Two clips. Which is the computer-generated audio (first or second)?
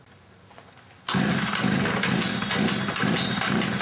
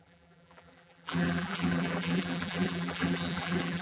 second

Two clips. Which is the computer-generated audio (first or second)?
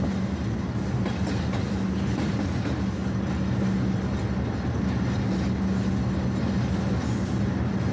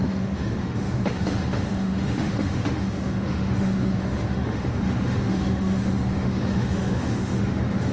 second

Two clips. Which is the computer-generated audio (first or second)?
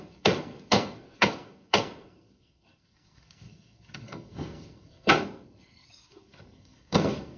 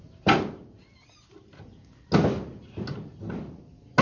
first